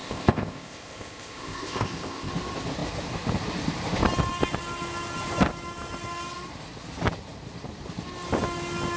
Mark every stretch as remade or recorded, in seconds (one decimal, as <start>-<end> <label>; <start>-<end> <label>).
0.0-2.3 remade; 2.3-9.0 recorded